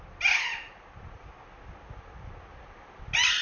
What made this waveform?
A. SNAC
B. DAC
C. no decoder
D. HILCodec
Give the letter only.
C